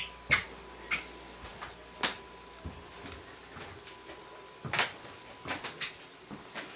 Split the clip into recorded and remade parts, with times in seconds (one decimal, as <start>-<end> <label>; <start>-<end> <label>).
0.0-6.8 recorded